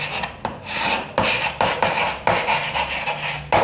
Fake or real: real